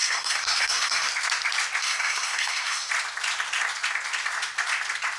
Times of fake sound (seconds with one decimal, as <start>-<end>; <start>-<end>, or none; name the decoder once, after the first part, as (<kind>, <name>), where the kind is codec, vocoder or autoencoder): 0.0-1.1 (codec, SNAC); 1.8-2.9